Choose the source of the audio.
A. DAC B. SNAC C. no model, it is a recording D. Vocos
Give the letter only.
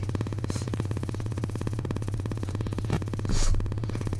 D